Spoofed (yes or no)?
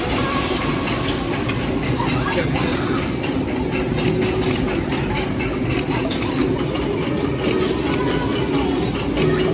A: no